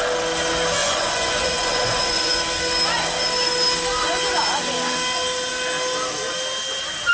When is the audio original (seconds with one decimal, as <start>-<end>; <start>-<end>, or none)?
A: 0.0-0.8; 2.4-7.1